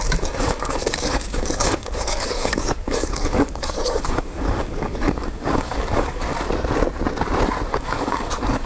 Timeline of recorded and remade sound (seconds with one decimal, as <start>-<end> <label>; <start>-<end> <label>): 0.0-6.3 remade; 6.3-7.7 recorded; 7.7-8.7 remade